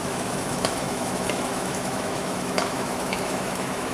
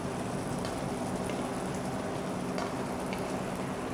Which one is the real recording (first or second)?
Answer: second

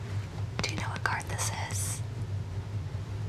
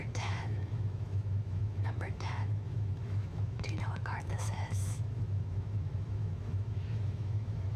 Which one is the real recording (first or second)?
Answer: first